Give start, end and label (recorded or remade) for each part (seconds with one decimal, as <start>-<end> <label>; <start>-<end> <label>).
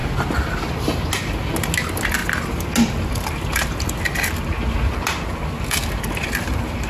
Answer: 0.0-6.9 recorded